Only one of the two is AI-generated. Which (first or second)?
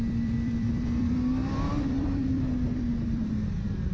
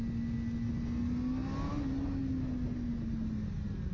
first